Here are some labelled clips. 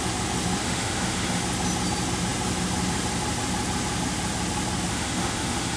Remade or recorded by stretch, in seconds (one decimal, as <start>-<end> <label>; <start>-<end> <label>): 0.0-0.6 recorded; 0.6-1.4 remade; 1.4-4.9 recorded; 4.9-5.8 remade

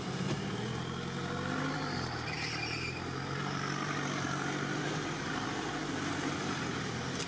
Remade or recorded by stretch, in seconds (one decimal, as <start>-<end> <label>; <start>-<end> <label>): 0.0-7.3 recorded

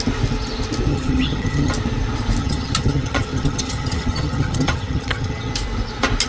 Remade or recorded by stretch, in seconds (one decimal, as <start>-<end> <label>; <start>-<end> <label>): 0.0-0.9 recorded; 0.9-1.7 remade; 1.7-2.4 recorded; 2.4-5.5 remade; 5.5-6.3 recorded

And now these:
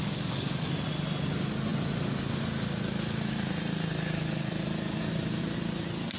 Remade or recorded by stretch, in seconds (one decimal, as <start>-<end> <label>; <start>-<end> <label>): 0.0-0.7 remade; 0.7-6.2 recorded

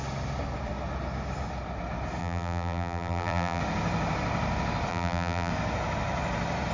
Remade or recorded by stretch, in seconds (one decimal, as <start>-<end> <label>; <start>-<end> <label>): 0.0-2.2 recorded; 2.2-3.6 remade; 3.6-4.9 recorded; 4.9-5.5 remade; 5.5-6.7 recorded

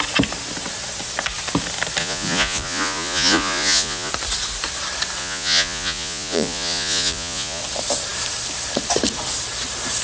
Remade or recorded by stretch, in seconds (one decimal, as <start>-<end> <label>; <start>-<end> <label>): 0.0-2.0 recorded; 2.0-4.1 remade; 4.1-5.2 recorded; 5.2-7.6 remade; 7.6-10.0 recorded

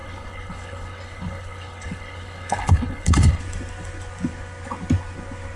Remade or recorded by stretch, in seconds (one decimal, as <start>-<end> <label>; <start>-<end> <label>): 0.0-3.4 remade; 3.4-5.6 recorded

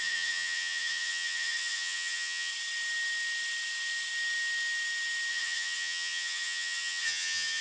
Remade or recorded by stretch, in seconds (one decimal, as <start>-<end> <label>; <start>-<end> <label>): 0.0-2.5 remade; 2.5-5.3 recorded; 5.3-7.6 remade